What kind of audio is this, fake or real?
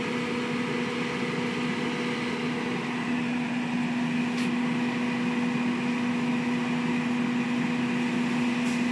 real